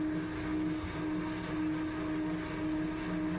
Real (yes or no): yes